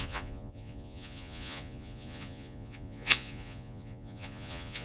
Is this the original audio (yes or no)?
no